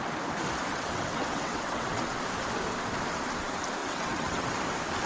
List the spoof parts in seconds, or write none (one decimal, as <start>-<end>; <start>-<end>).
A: 0.7-2.0; 3.8-4.6